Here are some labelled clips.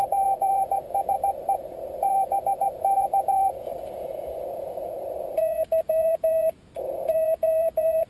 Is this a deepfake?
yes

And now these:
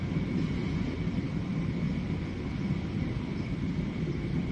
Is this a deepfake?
no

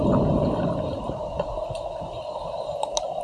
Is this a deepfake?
no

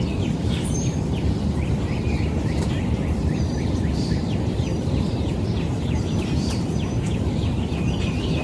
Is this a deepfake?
yes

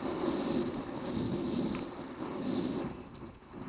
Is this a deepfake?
no